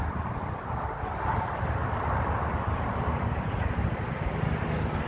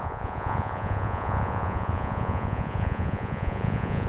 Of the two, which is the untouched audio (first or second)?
first